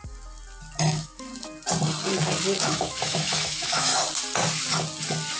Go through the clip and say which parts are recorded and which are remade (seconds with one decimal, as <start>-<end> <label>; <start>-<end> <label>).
0.0-0.8 recorded; 0.8-1.3 remade; 1.3-2.6 recorded; 2.6-3.9 remade; 3.9-5.4 recorded